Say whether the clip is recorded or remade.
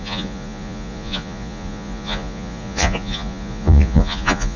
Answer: remade